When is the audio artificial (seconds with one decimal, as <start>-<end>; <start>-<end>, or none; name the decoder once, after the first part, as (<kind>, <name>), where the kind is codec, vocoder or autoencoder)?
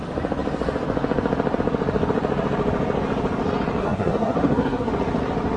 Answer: 3.8-4.9 (codec, SNAC)